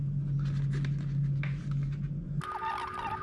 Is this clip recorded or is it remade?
recorded